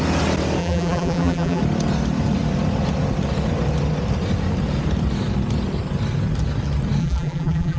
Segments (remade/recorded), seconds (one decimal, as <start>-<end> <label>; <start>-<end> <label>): 0.0-0.6 recorded; 0.6-1.6 remade; 1.6-7.0 recorded; 7.0-7.8 remade